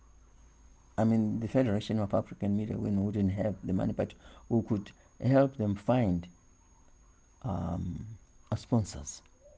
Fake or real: real